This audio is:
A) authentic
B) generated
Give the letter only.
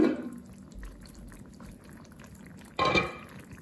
A